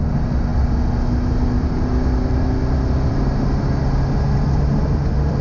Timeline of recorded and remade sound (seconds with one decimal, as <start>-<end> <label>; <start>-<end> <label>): 0.0-5.4 recorded